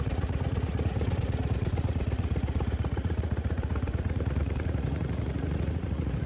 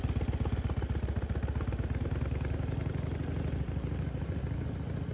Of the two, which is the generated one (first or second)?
first